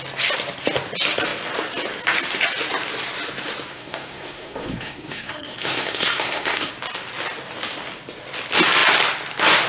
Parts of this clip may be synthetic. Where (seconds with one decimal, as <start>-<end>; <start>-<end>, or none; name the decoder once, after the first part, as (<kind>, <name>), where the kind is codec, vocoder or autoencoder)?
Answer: 3.7-6.7 (codec, SNAC)